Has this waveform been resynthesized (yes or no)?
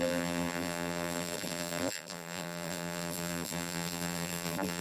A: yes